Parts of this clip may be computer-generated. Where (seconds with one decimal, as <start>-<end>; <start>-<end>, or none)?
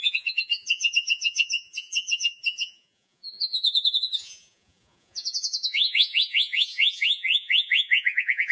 0.0-8.5